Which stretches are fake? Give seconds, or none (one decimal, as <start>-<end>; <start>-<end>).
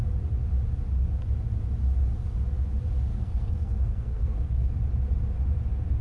3.1-4.7